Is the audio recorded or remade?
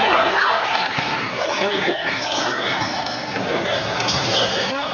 remade